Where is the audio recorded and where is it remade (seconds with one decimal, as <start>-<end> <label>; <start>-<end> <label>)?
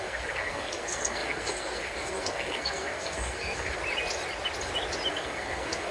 0.0-3.8 remade; 3.8-5.1 recorded; 5.1-5.9 remade